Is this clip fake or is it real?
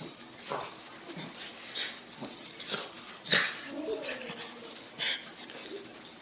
real